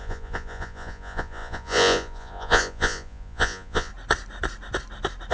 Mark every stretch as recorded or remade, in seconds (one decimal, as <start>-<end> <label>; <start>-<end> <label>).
0.0-3.9 remade; 3.9-5.3 recorded